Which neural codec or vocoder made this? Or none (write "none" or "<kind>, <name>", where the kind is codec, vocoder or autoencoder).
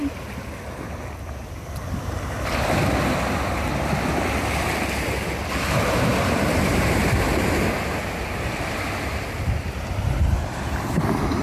none